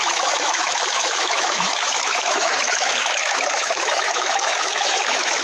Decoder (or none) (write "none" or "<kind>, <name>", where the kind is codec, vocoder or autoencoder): autoencoder, DAC-VAE